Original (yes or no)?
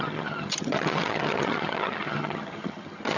no